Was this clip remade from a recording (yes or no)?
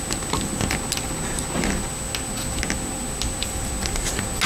no